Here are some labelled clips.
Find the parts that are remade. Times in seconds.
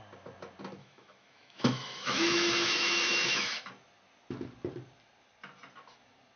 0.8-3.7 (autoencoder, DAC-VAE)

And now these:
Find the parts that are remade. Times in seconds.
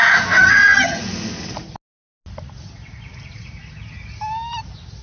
0.4-1.0 (vocoder, HiFi-GAN)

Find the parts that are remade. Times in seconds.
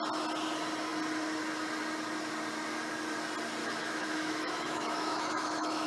3.6-5.9 (autoencoder, DAC-VAE)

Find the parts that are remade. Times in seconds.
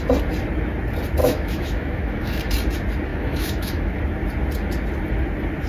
1.2-2.4 (autoencoder, DAC-VAE); 3.1-4.0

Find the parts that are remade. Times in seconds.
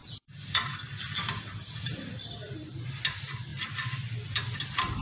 0.0-3.0 (vocoder, BigVGAN v2)